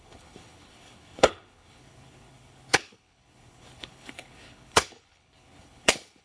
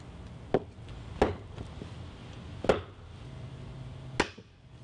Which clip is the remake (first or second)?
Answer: first